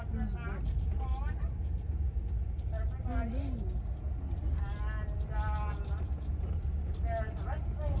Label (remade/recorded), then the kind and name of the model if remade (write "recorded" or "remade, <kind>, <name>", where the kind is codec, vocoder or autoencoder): recorded